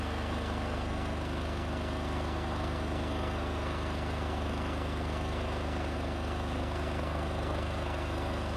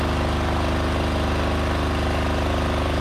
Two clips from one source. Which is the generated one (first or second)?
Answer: first